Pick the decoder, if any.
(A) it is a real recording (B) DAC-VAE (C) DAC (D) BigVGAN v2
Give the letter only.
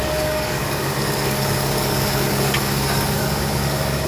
C